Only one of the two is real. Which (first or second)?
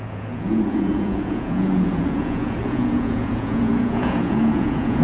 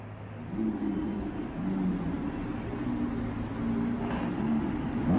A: second